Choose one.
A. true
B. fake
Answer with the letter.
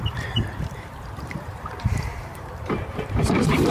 B